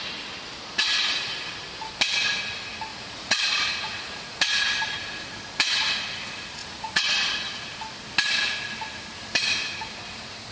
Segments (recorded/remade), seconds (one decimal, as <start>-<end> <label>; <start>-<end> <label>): 0.0-2.9 recorded; 2.9-4.4 remade; 4.4-6.6 recorded; 6.6-7.4 remade; 7.4-10.5 recorded